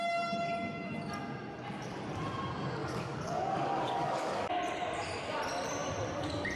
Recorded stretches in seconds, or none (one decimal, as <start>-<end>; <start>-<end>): 0.0-2.8; 4.5-6.6